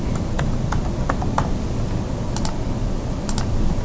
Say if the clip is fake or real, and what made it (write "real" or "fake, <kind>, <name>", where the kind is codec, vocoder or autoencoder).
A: real